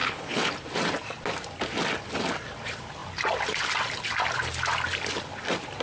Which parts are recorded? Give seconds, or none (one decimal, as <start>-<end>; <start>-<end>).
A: 0.5-5.8